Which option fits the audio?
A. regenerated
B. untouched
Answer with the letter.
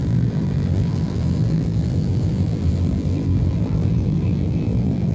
A